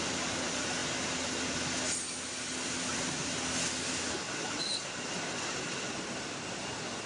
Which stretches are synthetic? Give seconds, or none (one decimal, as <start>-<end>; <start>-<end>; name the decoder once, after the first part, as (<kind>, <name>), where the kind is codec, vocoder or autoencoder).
none